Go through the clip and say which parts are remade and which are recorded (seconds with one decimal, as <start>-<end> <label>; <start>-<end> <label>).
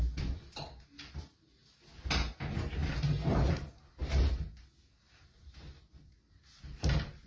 0.0-7.3 recorded